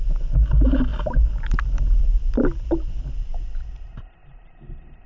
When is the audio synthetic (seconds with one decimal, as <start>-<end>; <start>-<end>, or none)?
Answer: none